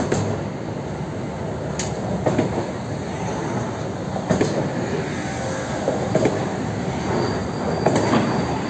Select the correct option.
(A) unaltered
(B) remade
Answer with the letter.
A